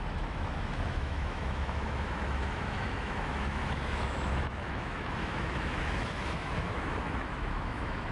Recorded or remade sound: remade